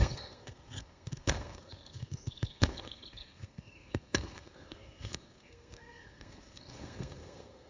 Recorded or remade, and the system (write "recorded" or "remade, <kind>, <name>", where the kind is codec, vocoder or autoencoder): remade, codec, SNAC